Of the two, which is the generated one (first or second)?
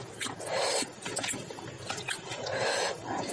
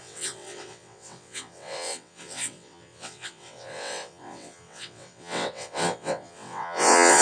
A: second